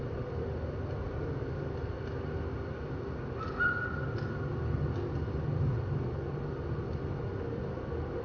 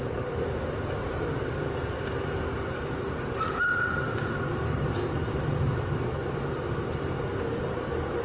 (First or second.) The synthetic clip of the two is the second